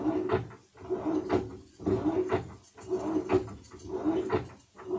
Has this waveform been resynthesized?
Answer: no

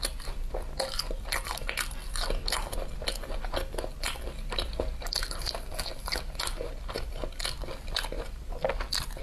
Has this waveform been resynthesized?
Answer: no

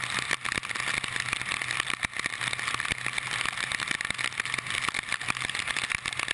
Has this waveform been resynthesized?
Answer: no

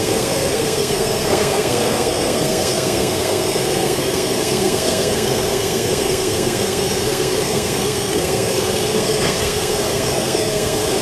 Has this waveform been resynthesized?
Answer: yes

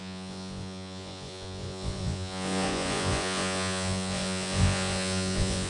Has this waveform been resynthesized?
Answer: yes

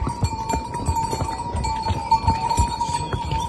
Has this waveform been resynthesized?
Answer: no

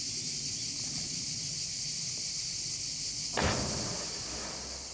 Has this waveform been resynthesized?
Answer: no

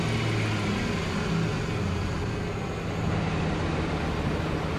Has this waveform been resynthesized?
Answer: no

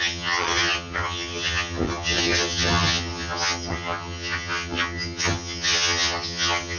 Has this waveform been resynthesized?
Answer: yes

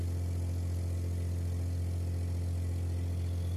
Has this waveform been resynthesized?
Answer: no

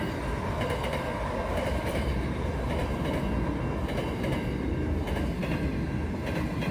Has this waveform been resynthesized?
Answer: no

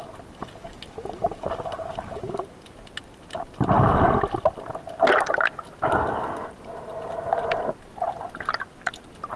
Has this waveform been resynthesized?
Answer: no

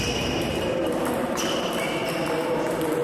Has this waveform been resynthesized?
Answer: no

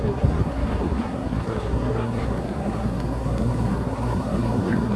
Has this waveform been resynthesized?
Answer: yes